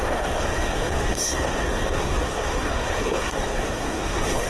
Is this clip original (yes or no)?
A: no